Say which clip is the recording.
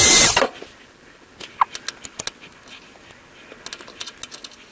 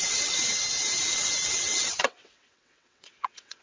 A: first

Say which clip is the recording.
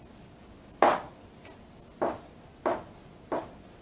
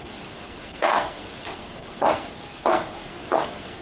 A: first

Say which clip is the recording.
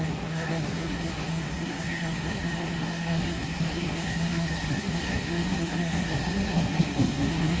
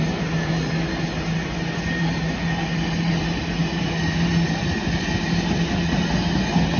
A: second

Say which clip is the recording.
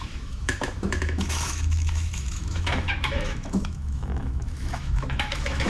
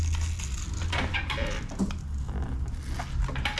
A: second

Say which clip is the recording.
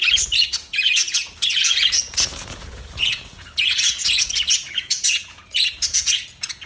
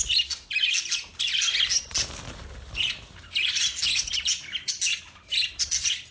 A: second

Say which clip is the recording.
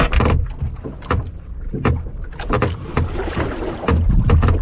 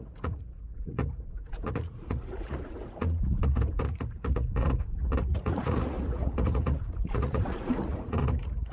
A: first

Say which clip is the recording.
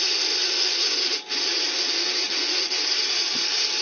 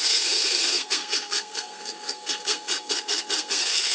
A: first